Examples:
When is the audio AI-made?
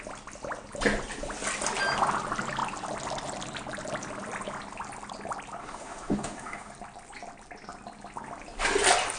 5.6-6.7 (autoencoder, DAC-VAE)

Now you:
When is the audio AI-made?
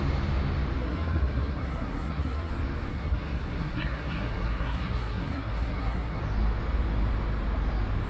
0.8-2.5 (codec, SNAC); 2.9-6.2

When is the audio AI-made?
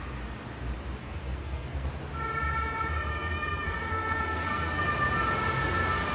1.0-1.9 (codec, SNAC); 3.1-4.8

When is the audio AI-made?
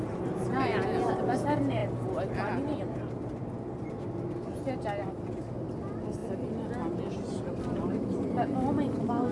none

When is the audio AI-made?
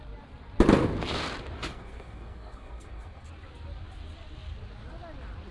1.7-3.3 (codec, SNAC)